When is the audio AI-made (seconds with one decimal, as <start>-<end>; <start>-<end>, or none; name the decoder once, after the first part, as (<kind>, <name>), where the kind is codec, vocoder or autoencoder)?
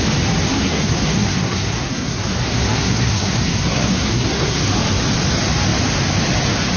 0.5-4.6 (codec, SNAC)